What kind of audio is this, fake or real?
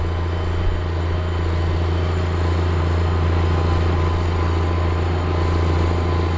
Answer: real